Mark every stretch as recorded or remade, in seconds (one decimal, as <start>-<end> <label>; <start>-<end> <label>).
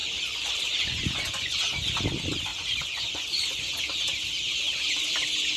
0.0-1.6 remade; 1.6-2.5 recorded; 2.5-3.8 remade; 3.8-5.6 recorded